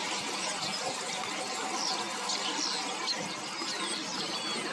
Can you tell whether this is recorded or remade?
recorded